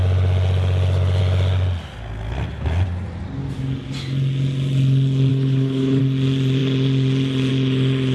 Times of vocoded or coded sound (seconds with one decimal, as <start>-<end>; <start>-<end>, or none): 5.3-6.0